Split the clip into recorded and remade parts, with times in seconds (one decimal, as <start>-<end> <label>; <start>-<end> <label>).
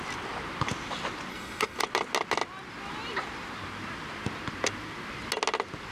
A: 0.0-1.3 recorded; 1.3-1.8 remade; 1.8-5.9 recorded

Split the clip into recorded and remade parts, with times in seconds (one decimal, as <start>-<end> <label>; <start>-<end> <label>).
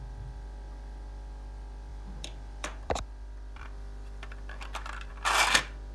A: 0.0-1.9 recorded; 1.9-5.1 remade; 5.1-5.9 recorded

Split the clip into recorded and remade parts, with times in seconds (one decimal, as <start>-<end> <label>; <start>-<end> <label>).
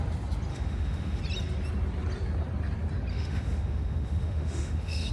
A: 0.0-0.5 recorded; 0.5-1.2 remade; 1.2-3.1 recorded; 3.1-5.1 remade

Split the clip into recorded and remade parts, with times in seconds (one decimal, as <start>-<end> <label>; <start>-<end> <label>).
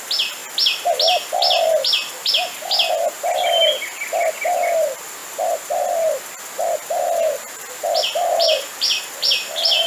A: 0.0-9.9 recorded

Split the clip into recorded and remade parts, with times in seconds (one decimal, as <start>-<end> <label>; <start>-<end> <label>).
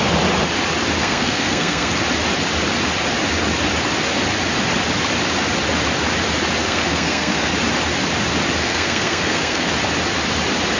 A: 0.0-1.0 recorded; 1.0-1.9 remade; 1.9-6.6 recorded; 6.6-7.5 remade; 7.5-8.6 recorded; 8.6-9.7 remade; 9.7-10.8 recorded